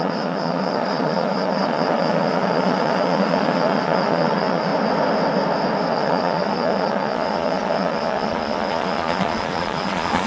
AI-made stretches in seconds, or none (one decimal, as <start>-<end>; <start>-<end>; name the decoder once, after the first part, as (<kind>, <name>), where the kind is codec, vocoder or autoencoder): 0.0-4.7 (vocoder, Vocos); 5.9-10.3

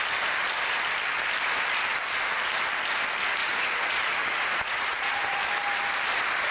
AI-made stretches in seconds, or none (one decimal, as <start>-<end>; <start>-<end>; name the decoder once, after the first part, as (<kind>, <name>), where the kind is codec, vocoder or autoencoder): 3.4-5.1 (vocoder, Vocos)

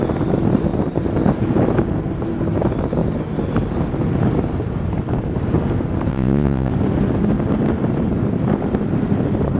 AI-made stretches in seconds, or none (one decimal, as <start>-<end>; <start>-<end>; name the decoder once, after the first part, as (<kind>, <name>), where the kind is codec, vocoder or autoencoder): 6.1-6.7 (vocoder, Vocos)

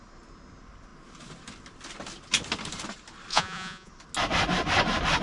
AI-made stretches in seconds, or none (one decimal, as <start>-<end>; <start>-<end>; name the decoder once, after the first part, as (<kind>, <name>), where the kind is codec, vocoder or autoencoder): 3.3-3.9 (vocoder, Vocos)

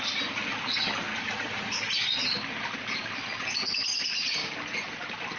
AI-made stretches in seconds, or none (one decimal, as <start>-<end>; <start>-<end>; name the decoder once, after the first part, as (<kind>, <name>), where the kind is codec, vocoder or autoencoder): none

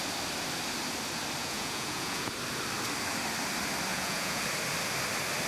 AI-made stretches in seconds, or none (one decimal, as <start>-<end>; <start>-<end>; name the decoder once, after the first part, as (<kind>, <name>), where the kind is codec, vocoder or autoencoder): 1.4-2.3 (vocoder, Vocos); 3.9-4.4

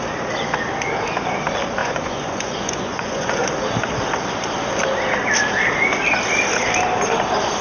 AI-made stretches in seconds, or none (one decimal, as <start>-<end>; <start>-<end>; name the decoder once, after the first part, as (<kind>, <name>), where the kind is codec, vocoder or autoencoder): 1.8-3.5 (vocoder, Vocos)